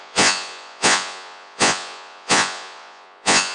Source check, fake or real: fake